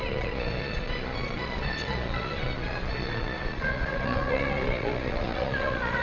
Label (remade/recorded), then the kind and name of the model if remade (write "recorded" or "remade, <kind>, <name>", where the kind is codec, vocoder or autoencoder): remade, vocoder, Vocos